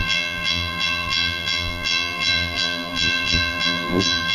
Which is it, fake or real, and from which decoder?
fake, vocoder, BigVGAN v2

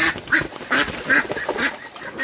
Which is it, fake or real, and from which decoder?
real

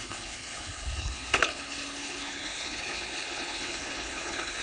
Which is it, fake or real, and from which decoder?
fake, codec, HILCodec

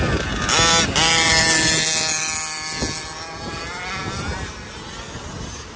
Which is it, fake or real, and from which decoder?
real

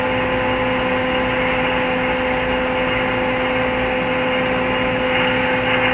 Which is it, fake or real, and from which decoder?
real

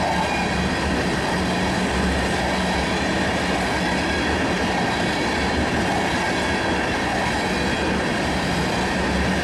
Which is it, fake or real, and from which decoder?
real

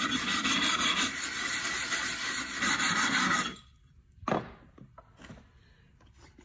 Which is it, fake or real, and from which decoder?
real